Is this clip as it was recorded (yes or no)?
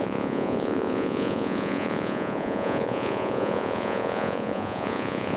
no